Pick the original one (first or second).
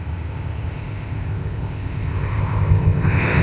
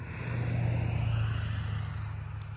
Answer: second